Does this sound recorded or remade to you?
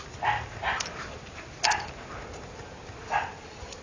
recorded